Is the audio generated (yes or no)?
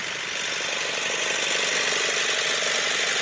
no